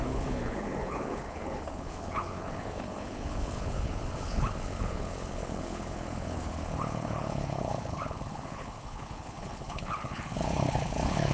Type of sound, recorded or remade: remade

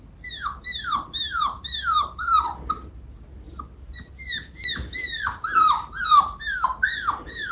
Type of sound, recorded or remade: recorded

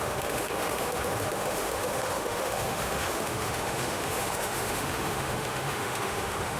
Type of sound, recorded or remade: remade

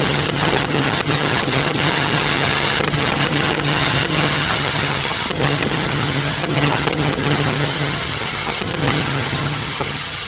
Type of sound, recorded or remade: remade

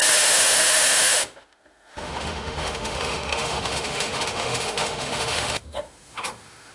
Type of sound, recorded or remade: remade